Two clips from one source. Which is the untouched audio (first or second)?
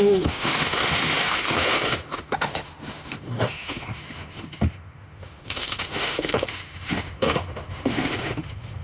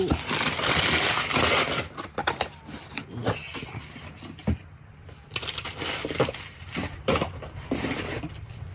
second